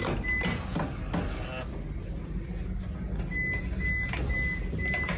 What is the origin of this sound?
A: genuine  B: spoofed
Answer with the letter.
A